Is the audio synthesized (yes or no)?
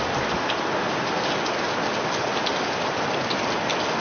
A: no